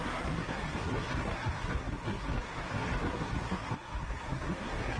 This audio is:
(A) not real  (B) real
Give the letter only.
A